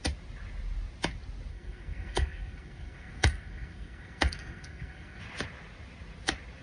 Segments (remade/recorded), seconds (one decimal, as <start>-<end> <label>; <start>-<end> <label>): 0.0-1.5 recorded; 1.5-5.2 remade; 5.2-6.6 recorded